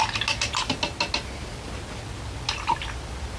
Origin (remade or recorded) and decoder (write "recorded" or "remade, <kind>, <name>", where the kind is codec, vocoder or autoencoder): recorded